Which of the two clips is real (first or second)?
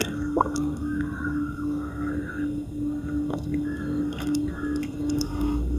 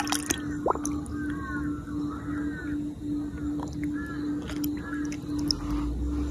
second